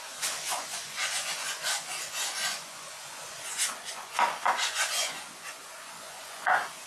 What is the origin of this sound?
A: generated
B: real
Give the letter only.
A